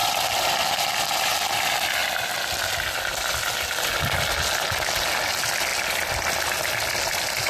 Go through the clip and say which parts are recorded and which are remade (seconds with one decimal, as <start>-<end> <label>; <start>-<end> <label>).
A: 0.0-0.6 remade; 0.6-7.5 recorded